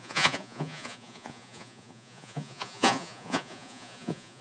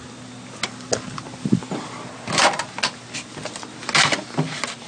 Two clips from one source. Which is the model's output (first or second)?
first